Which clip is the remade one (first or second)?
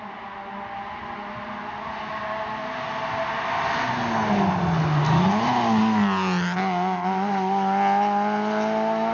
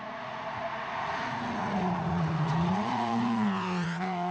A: second